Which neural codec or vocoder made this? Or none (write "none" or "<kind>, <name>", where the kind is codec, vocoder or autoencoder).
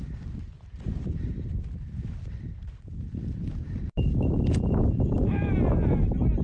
none